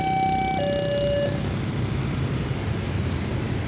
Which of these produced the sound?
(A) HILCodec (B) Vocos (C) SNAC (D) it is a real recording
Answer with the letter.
D